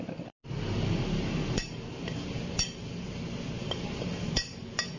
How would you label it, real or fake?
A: real